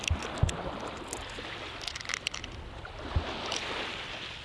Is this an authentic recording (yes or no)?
yes